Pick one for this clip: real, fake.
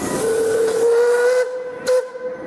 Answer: real